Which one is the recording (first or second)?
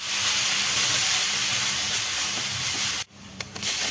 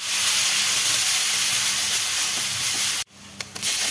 second